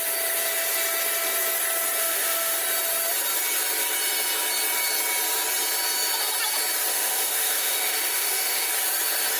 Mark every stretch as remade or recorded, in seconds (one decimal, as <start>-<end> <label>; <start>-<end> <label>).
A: 0.0-2.0 recorded; 2.0-2.6 remade; 2.6-6.9 recorded; 6.9-8.7 remade; 8.7-9.4 recorded